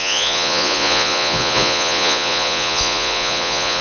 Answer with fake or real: fake